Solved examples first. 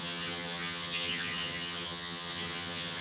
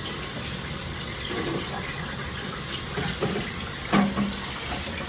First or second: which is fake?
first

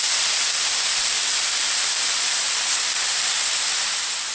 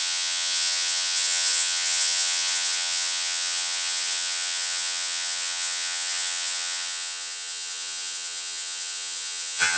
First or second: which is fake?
second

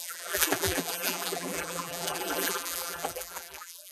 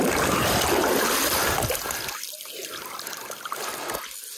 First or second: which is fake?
first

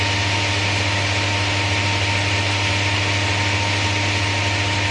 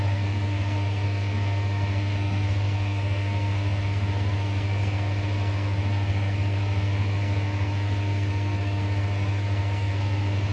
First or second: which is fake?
second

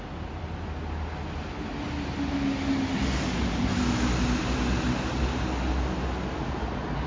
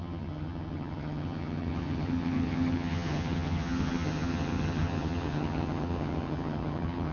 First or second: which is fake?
second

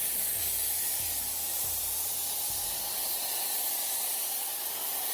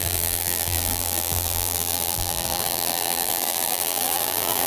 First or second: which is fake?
second